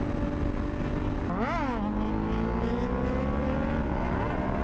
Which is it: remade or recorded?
recorded